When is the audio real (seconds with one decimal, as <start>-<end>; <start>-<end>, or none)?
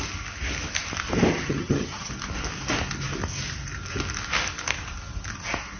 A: 0.0-1.3; 2.1-5.8